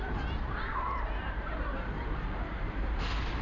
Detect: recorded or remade remade